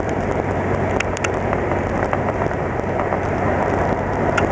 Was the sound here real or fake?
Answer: fake